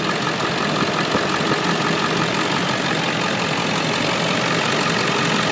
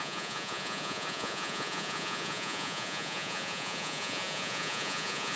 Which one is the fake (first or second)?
second